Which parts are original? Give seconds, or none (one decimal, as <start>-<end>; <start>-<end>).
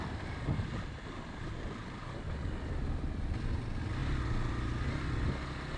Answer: 0.0-5.8